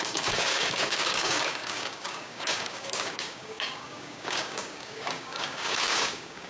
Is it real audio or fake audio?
fake